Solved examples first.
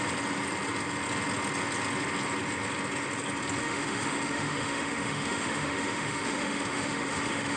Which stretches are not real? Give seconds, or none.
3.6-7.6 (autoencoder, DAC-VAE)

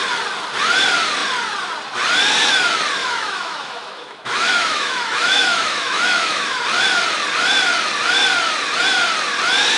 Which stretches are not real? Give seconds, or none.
3.0-6.6 (autoencoder, DAC-VAE)

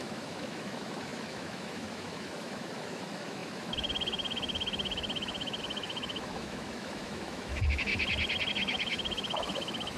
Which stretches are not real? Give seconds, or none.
0.0-7.9 (autoencoder, DAC-VAE); 8.5-10.0

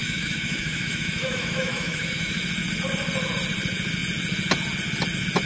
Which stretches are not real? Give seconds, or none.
0.0-2.4 (autoencoder, DAC-VAE)